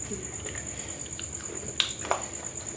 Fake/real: real